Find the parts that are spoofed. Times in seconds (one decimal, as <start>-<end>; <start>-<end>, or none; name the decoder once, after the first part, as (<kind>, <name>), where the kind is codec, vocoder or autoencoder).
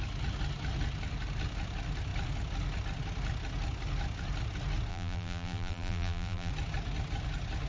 4.9-6.5 (vocoder, BigVGAN v2)